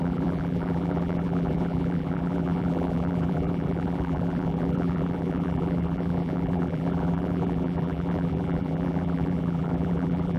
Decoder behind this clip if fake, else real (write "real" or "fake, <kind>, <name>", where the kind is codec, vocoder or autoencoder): fake, vocoder, BigVGAN v2